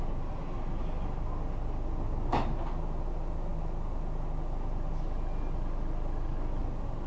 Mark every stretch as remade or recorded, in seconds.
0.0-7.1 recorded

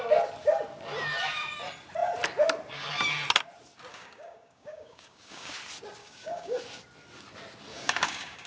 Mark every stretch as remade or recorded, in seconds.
0.0-3.9 recorded; 3.9-5.5 remade; 5.5-6.0 recorded; 6.0-6.6 remade; 6.6-7.7 recorded; 7.7-8.5 remade

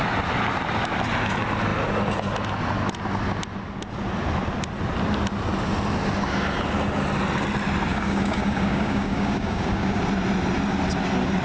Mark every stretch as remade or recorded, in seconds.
0.0-7.9 recorded; 7.9-10.0 remade; 10.0-11.4 recorded

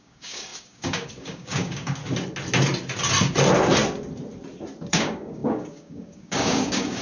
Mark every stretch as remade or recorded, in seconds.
0.0-2.0 remade; 2.0-4.9 recorded; 4.9-7.0 remade

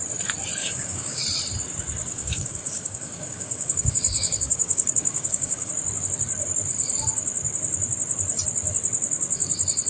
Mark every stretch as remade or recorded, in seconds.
0.0-0.6 recorded; 0.6-1.2 remade; 1.2-2.1 recorded; 2.1-5.7 remade; 5.7-9.9 recorded

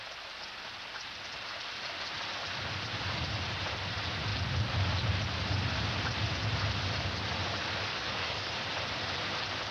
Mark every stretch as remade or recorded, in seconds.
0.0-7.9 recorded; 7.9-8.5 remade; 8.5-9.7 recorded